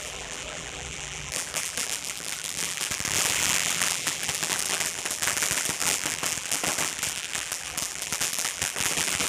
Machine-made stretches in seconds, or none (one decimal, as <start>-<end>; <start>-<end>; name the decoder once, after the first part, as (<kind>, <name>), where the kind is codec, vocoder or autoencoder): 0.0-9.3 (vocoder, BigVGAN v2)